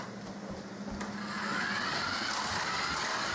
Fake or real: real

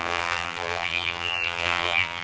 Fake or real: fake